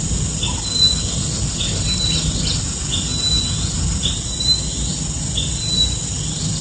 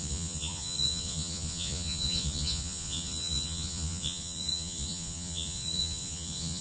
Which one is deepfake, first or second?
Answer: second